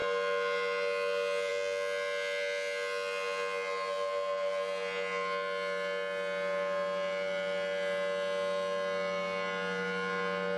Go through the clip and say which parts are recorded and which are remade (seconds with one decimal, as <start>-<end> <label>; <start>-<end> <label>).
0.0-10.6 recorded